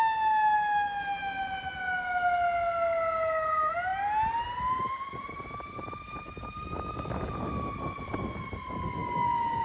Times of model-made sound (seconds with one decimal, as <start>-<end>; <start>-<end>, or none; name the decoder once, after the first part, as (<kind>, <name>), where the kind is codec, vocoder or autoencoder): none